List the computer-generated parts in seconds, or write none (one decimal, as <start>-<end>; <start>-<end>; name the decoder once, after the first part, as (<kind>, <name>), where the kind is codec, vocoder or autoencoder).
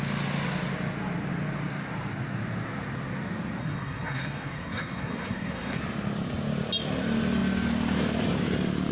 3.6-5.8 (codec, SNAC)